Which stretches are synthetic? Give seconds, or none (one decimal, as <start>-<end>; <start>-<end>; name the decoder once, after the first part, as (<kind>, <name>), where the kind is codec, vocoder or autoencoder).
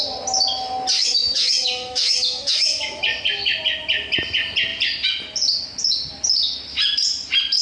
1.0-3.0 (autoencoder, DAC-VAE)